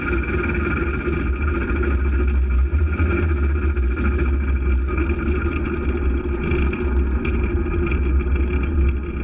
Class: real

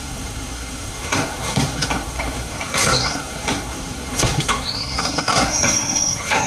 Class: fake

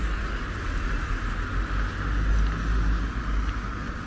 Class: real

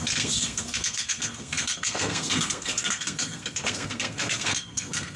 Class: fake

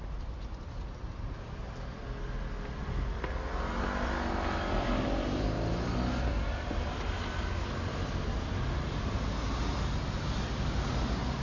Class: real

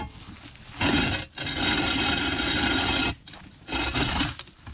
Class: real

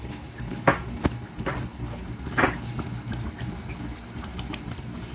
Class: real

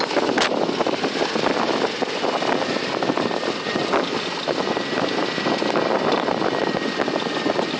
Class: real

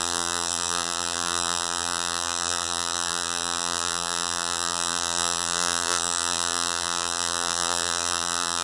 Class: fake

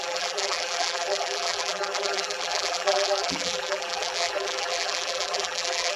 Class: fake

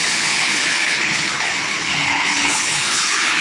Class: fake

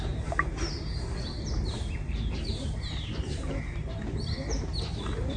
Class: fake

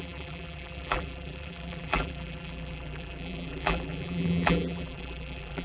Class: fake